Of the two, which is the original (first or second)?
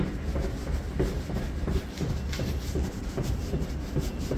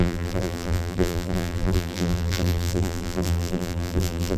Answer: first